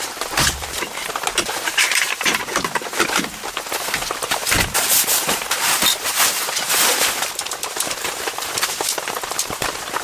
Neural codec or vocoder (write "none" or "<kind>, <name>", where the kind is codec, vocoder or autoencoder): vocoder, BigVGAN v2